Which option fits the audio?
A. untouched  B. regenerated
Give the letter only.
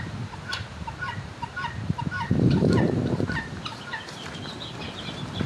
B